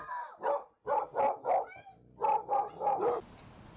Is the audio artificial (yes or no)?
no